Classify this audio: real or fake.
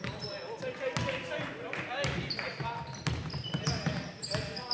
real